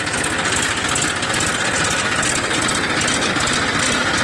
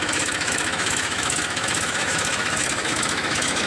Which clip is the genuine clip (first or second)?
first